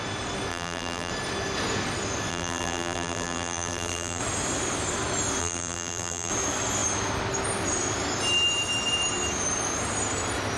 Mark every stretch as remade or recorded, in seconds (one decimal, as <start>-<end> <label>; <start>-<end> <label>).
0.0-0.5 recorded; 0.5-1.1 remade; 1.1-2.3 recorded; 2.3-4.2 remade; 4.2-5.4 recorded; 5.4-6.3 remade; 6.3-10.6 recorded